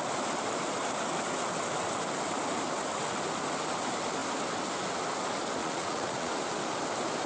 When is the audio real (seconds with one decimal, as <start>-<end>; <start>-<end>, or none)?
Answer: 0.0-5.6; 6.3-7.3